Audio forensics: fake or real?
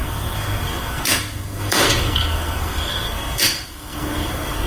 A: fake